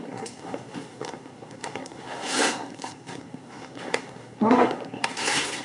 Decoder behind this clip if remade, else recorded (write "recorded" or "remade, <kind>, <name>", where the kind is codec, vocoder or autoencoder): remade, codec, SNAC